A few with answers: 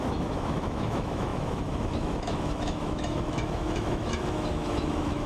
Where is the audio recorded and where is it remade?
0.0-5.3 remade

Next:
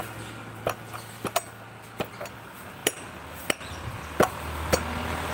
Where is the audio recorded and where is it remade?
0.0-5.3 recorded

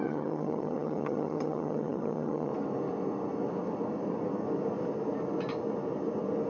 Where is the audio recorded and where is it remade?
0.0-2.5 remade; 2.5-6.5 recorded

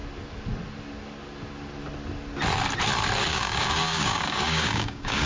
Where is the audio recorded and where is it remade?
0.0-3.2 recorded; 3.2-5.3 remade

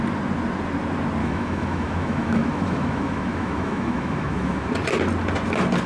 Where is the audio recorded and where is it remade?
0.0-1.2 recorded; 1.2-4.7 remade; 4.7-5.9 recorded

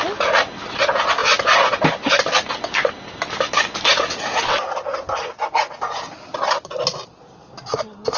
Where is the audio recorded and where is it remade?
0.0-8.2 recorded

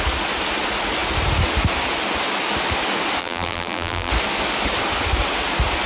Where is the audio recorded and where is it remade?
0.0-3.2 recorded; 3.2-4.1 remade; 4.1-5.9 recorded